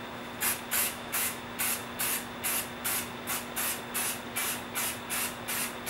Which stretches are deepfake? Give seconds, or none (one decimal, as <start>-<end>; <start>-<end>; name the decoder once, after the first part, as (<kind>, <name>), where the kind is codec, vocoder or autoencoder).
0.8-1.4 (autoencoder, DAC-VAE)